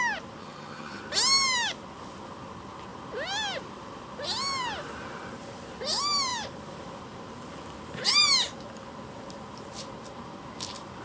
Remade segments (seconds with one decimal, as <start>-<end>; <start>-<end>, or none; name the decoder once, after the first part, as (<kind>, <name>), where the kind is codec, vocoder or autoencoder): 0.4-1.0 (vocoder, HiFi-GAN)